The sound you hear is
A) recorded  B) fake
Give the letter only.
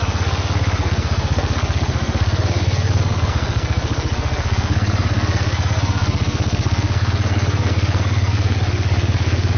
B